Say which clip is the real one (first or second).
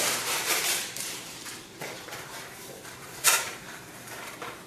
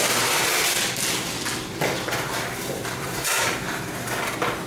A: second